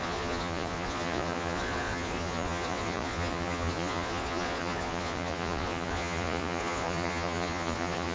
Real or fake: fake